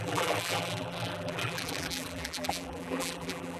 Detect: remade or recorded remade